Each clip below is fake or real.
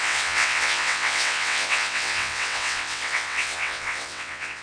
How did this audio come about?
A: fake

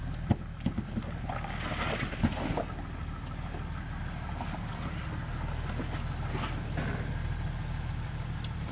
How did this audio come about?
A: real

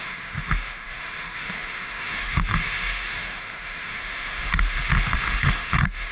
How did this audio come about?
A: fake